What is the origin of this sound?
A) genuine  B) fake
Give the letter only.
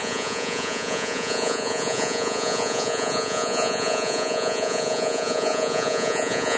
B